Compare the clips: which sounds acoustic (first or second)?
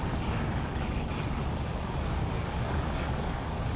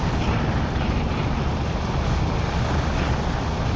second